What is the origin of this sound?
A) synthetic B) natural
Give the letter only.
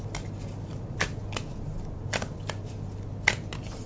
B